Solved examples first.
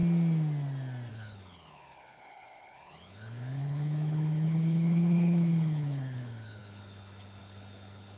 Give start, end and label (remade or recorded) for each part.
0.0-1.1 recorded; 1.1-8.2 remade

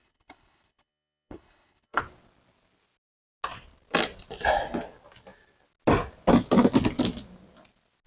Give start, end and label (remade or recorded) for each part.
0.0-2.0 remade; 2.0-8.1 recorded

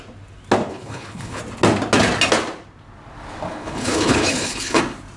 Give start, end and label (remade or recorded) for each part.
0.0-0.7 recorded; 0.7-1.4 remade; 1.4-3.5 recorded; 3.5-4.8 remade; 4.8-5.2 recorded

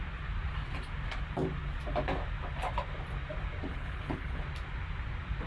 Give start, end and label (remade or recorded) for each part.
0.0-3.7 recorded; 3.7-4.4 remade; 4.4-5.5 recorded

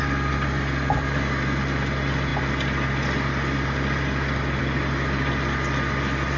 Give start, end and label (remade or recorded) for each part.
0.0-6.4 recorded

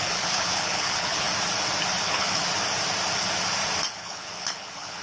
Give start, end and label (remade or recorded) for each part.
0.0-1.3 remade; 1.3-2.0 recorded; 2.0-2.4 remade; 2.4-3.9 recorded; 3.9-5.0 remade

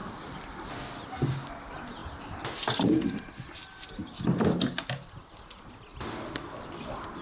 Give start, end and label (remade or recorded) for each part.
0.0-7.2 recorded

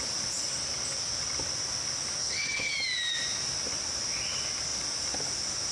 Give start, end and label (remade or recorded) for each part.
0.0-2.2 recorded; 2.2-2.7 remade; 2.7-5.7 recorded